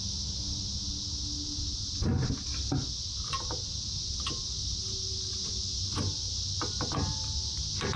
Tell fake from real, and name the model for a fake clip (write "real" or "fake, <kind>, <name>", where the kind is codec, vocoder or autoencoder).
real